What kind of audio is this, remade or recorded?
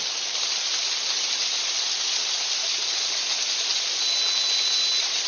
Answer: recorded